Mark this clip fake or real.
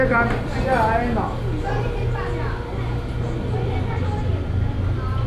real